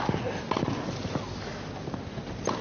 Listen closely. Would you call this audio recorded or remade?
recorded